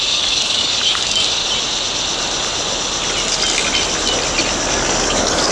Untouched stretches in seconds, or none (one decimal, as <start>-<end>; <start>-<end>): 1.4-4.7

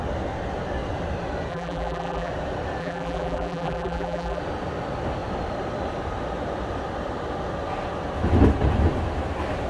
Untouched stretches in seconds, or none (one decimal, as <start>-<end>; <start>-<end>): 0.0-1.5; 2.3-2.8; 4.4-9.7

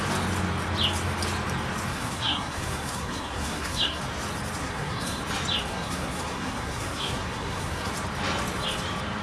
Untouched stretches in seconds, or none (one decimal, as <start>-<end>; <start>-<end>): 0.0-1.9; 4.0-4.6; 5.2-5.7; 7.9-9.2

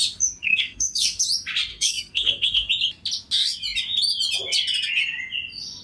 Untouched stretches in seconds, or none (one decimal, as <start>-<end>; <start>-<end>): 0.0-0.4; 1.2-1.7; 2.7-5.8

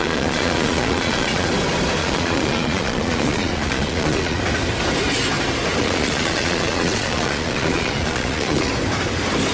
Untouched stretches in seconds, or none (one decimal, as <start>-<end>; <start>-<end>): 1.5-2.0; 4.4-5.8; 8.7-9.5

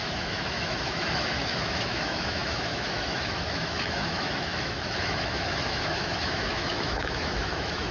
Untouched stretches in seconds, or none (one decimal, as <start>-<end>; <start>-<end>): none

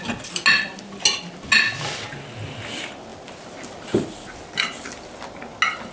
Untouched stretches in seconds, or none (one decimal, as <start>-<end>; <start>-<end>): 0.0-5.9

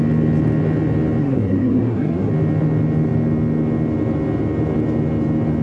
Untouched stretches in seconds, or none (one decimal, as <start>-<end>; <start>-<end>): 0.0-1.2; 2.3-5.6